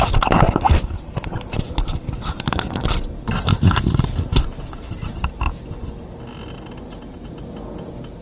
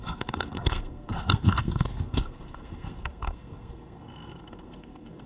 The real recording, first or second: first